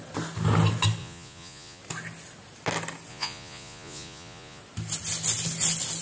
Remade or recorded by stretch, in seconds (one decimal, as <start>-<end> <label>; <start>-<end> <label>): 0.0-1.0 recorded; 1.0-1.8 remade; 1.8-3.1 recorded; 3.1-4.6 remade; 4.6-6.0 recorded